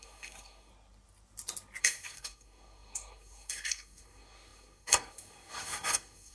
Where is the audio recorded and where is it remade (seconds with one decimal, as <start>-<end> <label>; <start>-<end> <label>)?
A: 0.0-0.7 remade; 0.7-1.8 recorded; 1.8-6.3 remade